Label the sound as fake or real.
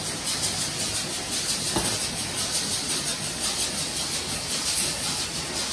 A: real